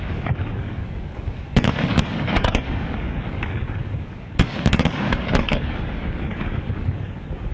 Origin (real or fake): fake